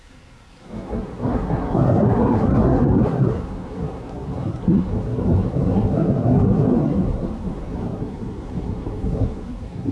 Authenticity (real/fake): fake